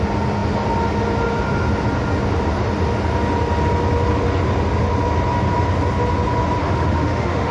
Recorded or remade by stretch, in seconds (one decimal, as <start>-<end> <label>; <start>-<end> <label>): 0.0-6.6 recorded; 6.6-7.5 remade